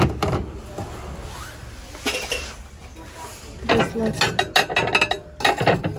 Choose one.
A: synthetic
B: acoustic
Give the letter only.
B